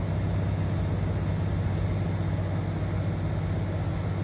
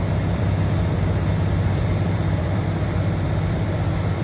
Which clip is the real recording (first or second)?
first